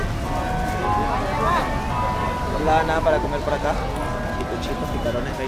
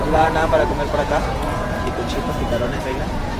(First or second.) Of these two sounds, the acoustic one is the first